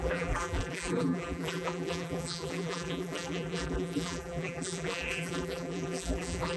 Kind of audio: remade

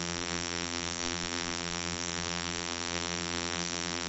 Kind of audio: remade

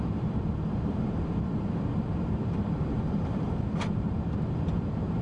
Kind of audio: remade